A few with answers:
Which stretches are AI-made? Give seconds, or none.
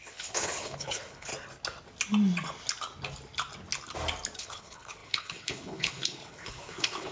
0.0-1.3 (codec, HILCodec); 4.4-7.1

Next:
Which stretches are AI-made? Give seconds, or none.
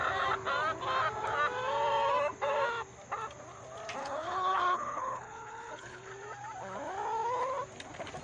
4.0-6.1 (codec, HILCodec)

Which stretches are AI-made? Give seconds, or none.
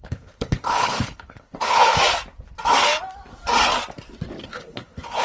0.0-1.9 (codec, HILCodec); 4.4-5.2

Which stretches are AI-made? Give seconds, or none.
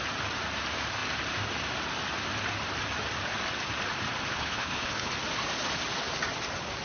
4.3-5.1 (codec, HILCodec)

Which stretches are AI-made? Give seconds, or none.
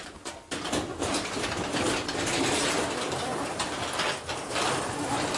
none